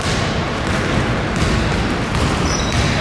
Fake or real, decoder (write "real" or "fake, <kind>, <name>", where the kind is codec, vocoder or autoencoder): real